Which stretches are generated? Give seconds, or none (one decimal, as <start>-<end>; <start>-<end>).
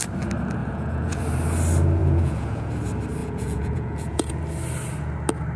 0.6-1.2; 2.0-2.7; 3.2-4.4